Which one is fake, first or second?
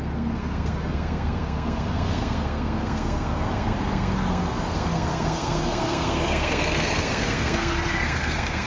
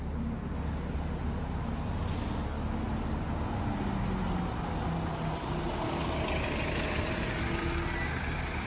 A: first